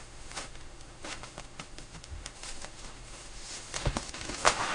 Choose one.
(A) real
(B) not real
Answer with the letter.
B